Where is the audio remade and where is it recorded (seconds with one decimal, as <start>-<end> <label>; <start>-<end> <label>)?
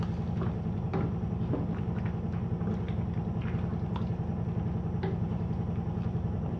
0.0-0.9 recorded; 0.9-2.0 remade; 2.0-6.6 recorded